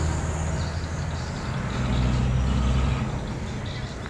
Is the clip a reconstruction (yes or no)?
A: no